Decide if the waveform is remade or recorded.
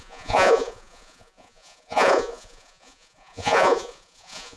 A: remade